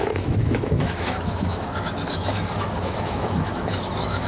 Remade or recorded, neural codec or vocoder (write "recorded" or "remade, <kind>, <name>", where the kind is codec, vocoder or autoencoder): remade, autoencoder, DAC-VAE